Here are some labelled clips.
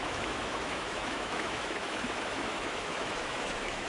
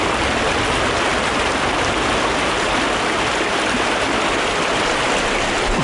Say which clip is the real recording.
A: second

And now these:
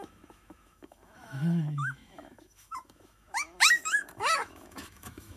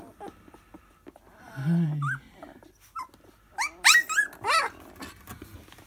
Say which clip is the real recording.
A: second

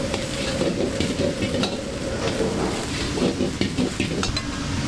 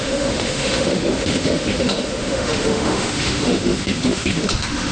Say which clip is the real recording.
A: first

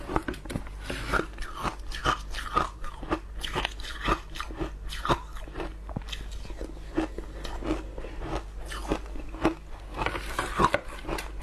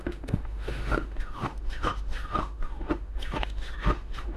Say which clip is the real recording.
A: first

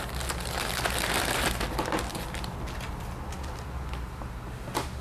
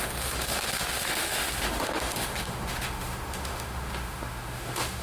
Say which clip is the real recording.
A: first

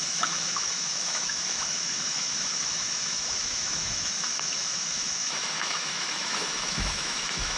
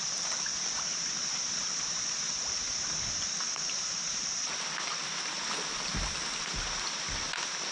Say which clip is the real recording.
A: second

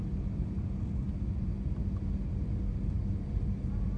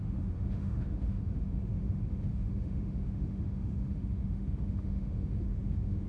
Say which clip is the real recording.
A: first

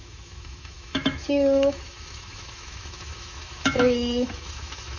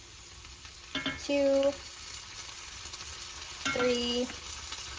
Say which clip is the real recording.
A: second